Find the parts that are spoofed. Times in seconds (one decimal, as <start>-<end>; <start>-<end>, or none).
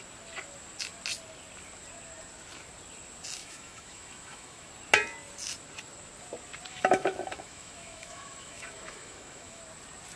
3.4-4.7; 6.7-9.6